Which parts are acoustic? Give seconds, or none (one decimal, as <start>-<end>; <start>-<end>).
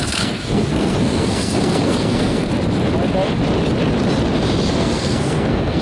2.5-4.7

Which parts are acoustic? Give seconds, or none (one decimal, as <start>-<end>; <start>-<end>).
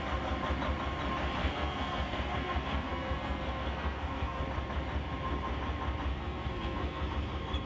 0.0-1.4; 4.4-6.1; 7.1-7.7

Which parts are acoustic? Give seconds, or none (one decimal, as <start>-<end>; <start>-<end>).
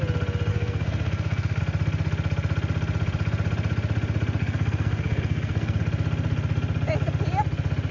0.0-0.5; 1.6-4.4; 5.8-7.9